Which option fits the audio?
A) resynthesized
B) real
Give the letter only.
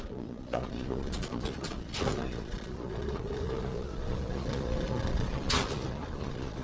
A